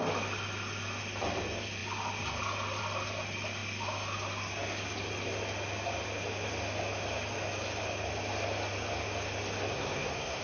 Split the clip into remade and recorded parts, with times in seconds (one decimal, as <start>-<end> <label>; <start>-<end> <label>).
0.0-9.7 recorded; 9.7-10.4 remade